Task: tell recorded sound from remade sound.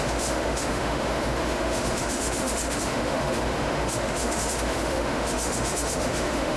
remade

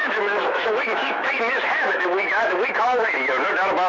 remade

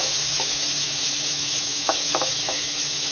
remade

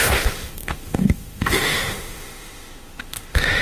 remade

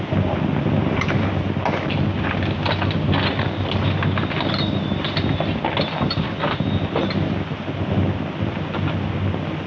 recorded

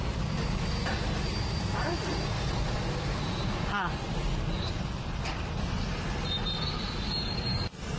recorded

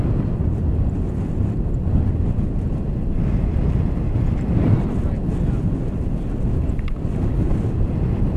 recorded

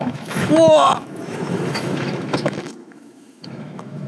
remade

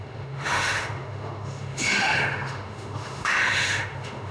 remade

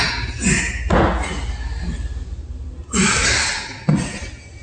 recorded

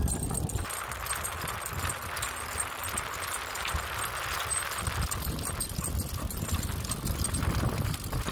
recorded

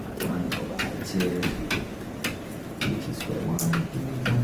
recorded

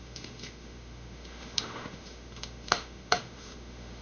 remade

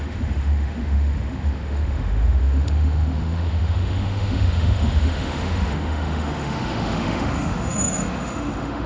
remade